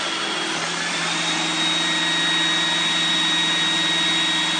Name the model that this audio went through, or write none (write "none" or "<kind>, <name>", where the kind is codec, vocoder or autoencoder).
none